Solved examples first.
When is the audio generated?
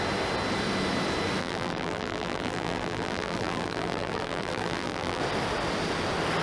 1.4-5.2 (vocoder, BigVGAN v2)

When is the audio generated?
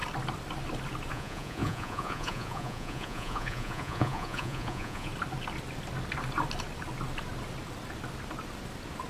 1.1-5.1 (vocoder, Vocos)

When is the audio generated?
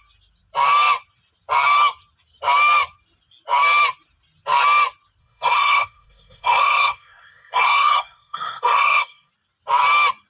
5.2-9.3 (codec, SNAC)